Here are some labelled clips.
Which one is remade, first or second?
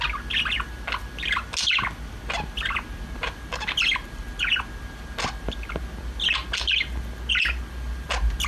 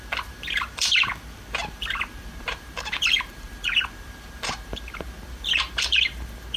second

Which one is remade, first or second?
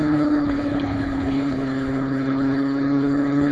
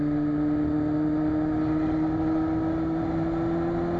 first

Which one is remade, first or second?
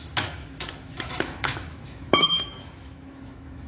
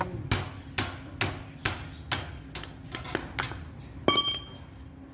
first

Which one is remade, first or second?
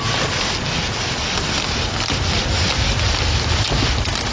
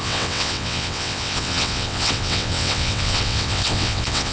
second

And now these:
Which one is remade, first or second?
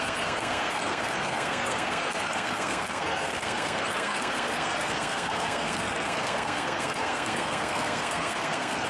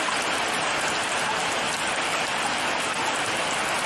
first